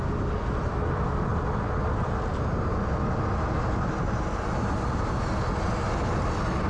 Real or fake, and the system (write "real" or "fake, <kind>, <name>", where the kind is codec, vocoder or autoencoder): real